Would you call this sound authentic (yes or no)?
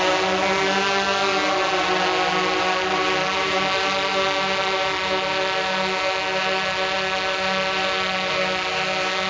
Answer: yes